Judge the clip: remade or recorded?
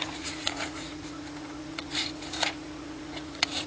remade